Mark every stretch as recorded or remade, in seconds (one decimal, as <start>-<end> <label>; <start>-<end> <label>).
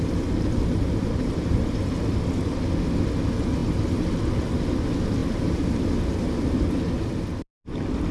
0.0-1.0 recorded; 1.0-1.6 remade; 1.6-5.2 recorded; 5.2-5.8 remade; 5.8-8.1 recorded